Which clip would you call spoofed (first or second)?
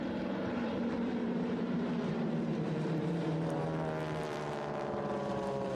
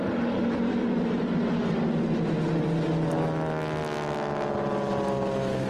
first